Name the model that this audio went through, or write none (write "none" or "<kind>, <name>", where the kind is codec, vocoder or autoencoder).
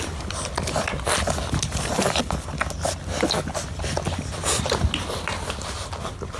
none